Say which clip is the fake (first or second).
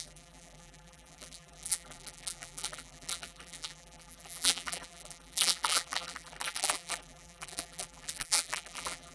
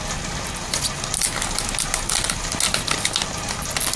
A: first